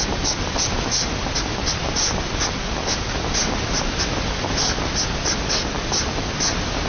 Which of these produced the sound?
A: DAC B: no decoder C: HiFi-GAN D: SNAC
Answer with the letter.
B